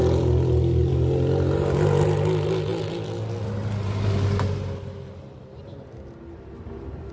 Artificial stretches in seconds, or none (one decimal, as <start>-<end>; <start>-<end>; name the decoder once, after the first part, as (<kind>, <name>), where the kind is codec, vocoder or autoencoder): none